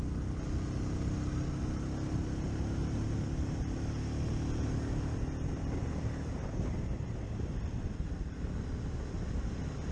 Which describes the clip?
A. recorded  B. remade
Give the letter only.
A